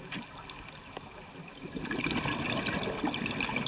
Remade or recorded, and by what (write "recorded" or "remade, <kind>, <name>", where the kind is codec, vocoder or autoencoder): recorded